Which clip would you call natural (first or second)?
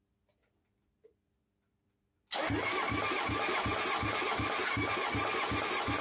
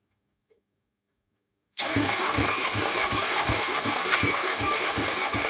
first